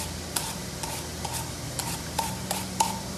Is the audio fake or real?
real